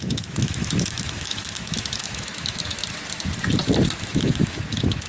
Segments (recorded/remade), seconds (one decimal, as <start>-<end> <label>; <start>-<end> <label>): 0.0-2.8 remade; 2.8-4.0 recorded; 4.0-5.1 remade